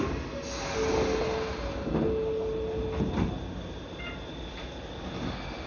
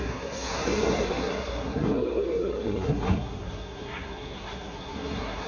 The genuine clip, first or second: first